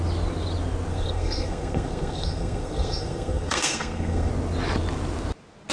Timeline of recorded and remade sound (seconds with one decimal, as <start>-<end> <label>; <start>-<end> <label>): 0.0-0.9 recorded; 0.9-4.3 remade; 4.3-5.7 recorded